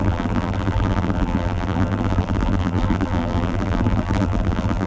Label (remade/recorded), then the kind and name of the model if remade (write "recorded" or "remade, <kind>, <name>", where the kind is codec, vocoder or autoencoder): remade, vocoder, BigVGAN v2